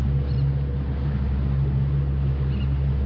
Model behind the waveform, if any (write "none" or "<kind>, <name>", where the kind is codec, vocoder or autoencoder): none